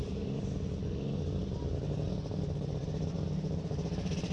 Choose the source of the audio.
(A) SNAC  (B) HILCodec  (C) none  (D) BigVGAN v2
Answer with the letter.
D